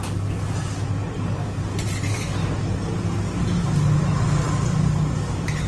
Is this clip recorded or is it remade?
recorded